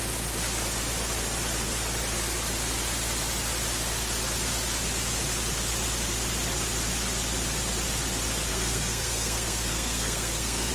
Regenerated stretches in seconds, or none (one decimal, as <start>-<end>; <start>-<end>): 8.5-10.7